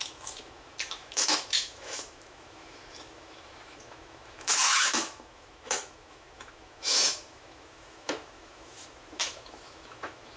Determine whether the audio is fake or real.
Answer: fake